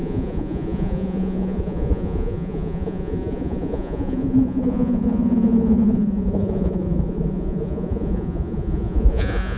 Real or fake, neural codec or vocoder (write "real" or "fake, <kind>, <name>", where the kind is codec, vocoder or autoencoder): fake, vocoder, Vocos